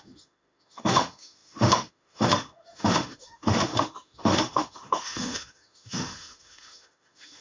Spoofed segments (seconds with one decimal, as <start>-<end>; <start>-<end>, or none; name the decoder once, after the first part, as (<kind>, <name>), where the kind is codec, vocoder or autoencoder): 0.0-7.4 (autoencoder, DAC-VAE)